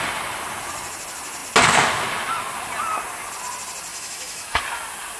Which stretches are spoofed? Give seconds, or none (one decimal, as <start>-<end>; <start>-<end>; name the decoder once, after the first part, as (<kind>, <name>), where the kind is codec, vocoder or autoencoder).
3.9-4.6 (autoencoder, DAC-VAE)